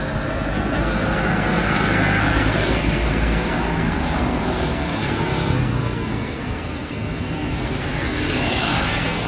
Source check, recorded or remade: remade